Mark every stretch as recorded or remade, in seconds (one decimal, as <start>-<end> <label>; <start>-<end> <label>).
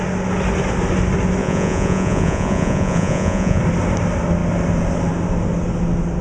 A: 0.0-1.4 recorded; 1.4-3.6 remade; 3.6-6.2 recorded